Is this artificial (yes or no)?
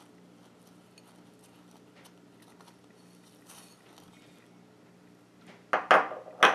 no